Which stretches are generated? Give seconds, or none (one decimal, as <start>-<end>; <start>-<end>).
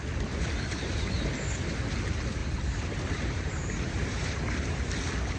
2.4-4.9